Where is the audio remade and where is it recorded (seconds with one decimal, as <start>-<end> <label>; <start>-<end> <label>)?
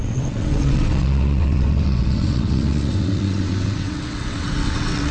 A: 0.0-5.1 remade